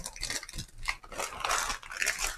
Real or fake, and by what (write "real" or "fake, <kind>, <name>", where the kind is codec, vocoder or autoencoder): real